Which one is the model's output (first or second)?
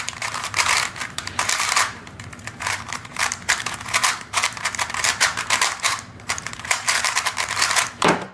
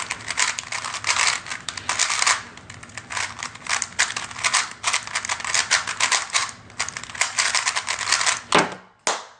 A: first